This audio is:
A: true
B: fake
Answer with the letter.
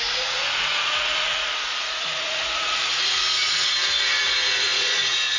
B